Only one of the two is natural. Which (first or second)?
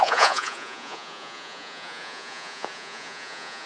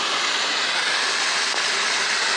second